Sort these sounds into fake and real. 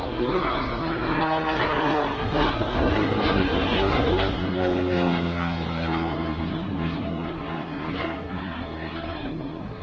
fake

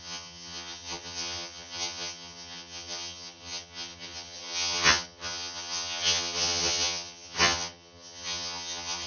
fake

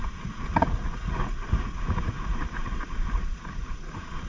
fake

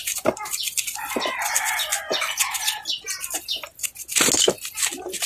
real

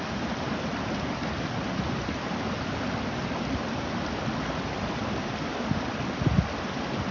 real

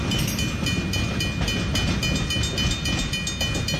real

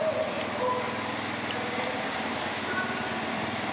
real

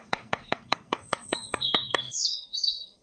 fake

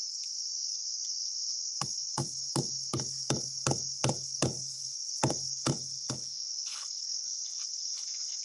fake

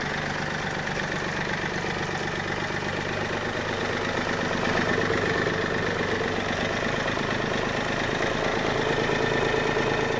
real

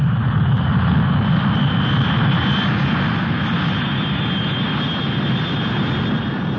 real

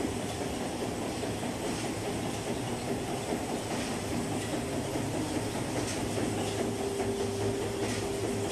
real